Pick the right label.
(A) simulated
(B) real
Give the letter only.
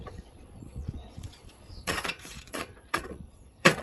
A